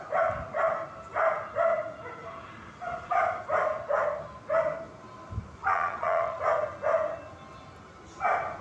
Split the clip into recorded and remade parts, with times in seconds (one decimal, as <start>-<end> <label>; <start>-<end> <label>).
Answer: 0.0-5.6 recorded; 5.6-6.4 remade; 6.4-8.6 recorded